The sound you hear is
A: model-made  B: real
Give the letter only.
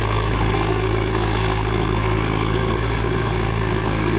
A